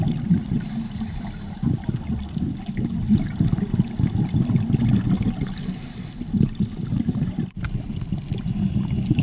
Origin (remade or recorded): recorded